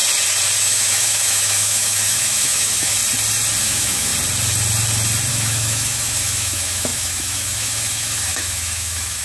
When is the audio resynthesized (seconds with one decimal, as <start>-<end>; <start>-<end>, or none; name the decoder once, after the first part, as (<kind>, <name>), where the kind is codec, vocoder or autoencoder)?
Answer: 0.6-3.0 (autoencoder, DAC-VAE); 3.6-4.1; 5.3-9.2